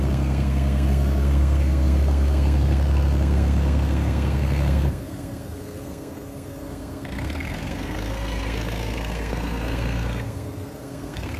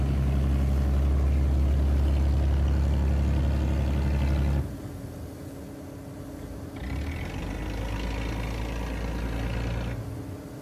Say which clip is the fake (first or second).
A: first